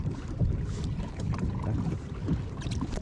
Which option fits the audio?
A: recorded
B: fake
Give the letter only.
A